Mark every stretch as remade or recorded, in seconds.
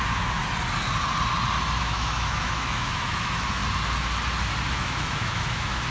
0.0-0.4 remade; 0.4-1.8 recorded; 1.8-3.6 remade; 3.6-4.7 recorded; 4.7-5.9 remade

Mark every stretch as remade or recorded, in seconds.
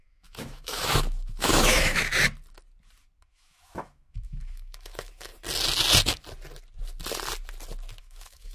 0.0-2.1 remade; 2.1-3.2 recorded; 3.2-5.3 remade; 5.3-8.0 recorded; 8.0-8.5 remade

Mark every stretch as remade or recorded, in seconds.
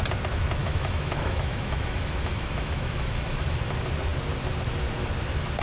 0.0-0.6 recorded; 0.6-3.6 remade; 3.6-5.6 recorded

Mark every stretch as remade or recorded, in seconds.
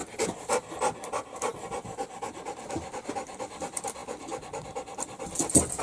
0.0-5.8 recorded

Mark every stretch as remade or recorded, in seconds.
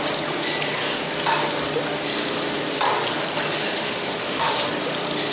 0.0-3.6 recorded; 3.6-4.7 remade; 4.7-5.3 recorded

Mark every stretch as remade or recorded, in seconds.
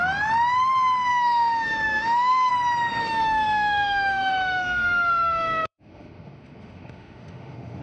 0.0-1.1 recorded; 1.1-2.5 remade; 2.5-3.0 recorded; 3.0-7.8 remade